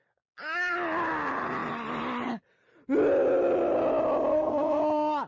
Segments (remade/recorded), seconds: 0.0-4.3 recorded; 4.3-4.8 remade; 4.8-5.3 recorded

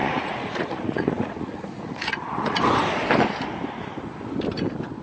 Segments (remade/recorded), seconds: 0.0-2.6 remade; 2.6-5.0 recorded

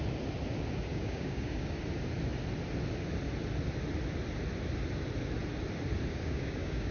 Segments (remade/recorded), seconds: 0.0-0.9 recorded; 0.9-1.8 remade; 1.8-6.1 recorded; 6.1-6.9 remade

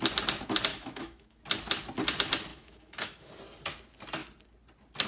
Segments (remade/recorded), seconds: 0.0-0.7 recorded; 0.7-1.4 remade; 1.4-2.5 recorded; 2.5-3.3 remade; 3.3-5.1 recorded

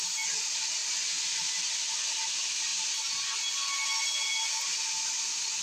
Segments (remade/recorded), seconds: 0.0-5.6 recorded

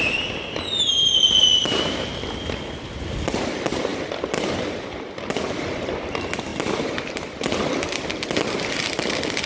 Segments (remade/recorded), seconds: 0.0-9.5 recorded

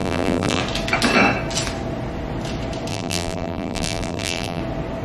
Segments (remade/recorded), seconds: 0.0-0.6 remade; 0.6-2.9 recorded; 2.9-4.6 remade; 4.6-5.0 recorded

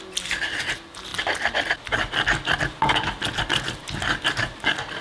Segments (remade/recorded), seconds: 0.0-5.0 recorded